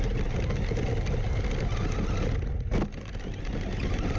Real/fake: real